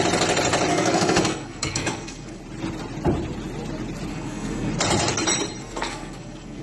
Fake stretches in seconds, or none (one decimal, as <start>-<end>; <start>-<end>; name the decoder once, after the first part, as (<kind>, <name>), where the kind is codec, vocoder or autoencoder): 0.7-2.4 (codec, SNAC); 4.1-4.7; 5.6-6.6